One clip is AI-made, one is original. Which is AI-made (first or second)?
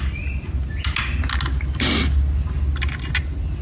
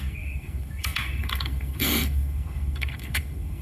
second